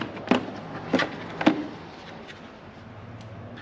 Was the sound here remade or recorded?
recorded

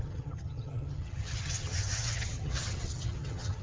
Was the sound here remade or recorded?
remade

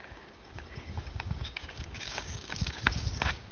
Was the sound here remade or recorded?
remade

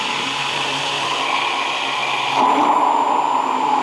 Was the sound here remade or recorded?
recorded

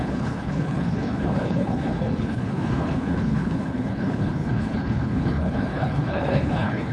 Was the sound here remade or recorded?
remade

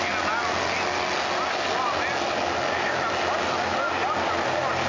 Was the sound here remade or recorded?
recorded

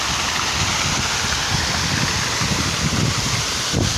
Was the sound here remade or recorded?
recorded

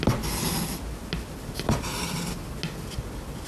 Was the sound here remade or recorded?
recorded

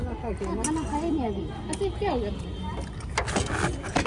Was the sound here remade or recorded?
recorded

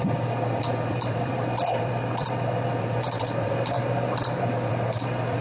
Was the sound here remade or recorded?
remade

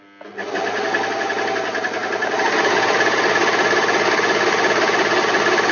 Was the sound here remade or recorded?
recorded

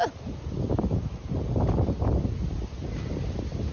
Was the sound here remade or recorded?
recorded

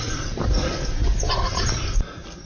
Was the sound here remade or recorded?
recorded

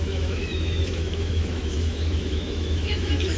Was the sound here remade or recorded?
remade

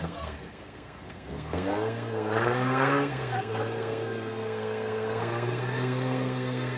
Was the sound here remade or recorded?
remade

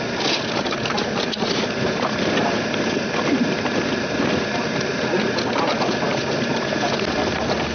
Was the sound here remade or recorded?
recorded